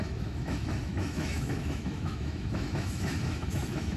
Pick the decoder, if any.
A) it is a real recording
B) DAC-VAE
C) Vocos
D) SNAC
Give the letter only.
B